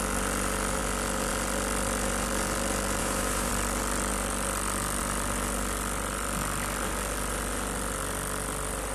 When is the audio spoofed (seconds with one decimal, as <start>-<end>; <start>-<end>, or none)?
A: 3.0-3.5